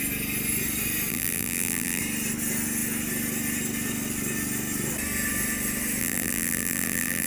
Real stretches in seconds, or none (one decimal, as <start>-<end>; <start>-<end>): 0.0-1.1; 2.0-6.0